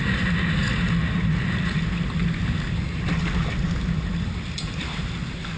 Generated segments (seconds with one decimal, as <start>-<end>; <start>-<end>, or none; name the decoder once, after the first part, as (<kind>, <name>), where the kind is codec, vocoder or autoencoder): none